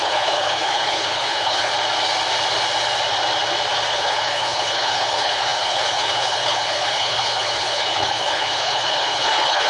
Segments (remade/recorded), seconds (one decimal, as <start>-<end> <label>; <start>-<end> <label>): 0.0-1.7 remade; 1.7-3.9 recorded; 3.9-9.7 remade